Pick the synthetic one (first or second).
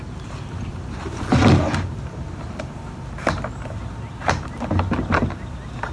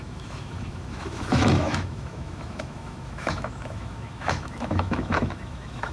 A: second